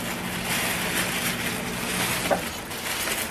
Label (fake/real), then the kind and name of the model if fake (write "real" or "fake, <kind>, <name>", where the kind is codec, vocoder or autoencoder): real